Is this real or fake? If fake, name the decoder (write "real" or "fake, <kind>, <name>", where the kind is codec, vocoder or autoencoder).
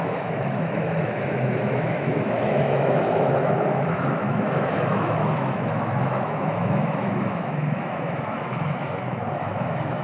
fake, autoencoder, DAC-VAE